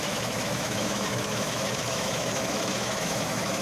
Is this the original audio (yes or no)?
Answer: no